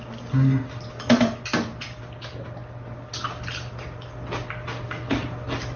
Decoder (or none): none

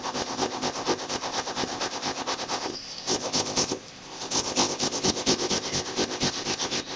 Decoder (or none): codec, ZipCodec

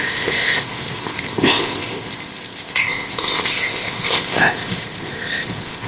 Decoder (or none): codec, ZipCodec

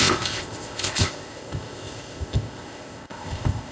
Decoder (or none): codec, ZipCodec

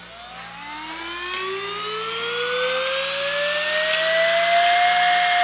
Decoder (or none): none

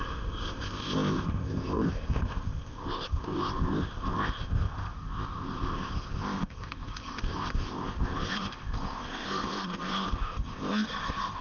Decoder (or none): codec, ZipCodec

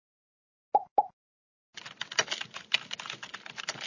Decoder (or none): none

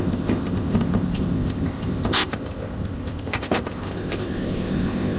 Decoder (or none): codec, ZipCodec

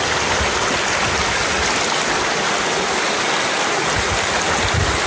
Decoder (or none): none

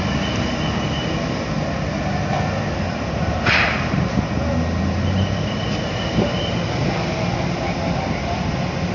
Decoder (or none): none